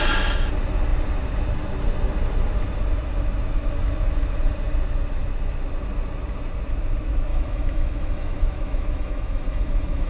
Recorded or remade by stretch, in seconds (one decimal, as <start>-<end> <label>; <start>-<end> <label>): 0.0-7.3 recorded; 7.3-10.1 remade